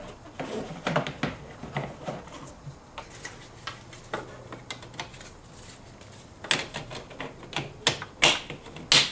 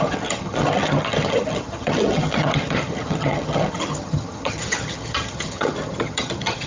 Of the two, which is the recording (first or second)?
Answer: first